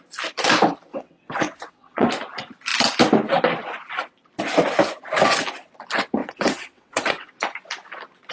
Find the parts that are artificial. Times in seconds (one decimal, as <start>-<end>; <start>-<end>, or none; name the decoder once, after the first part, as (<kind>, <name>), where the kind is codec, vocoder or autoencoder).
0.9-2.1 (vocoder, WaveNeXt); 6.2-7.3